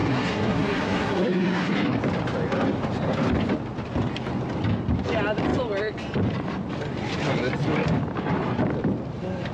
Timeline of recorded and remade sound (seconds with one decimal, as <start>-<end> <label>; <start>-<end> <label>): 0.0-2.0 remade; 2.0-9.5 recorded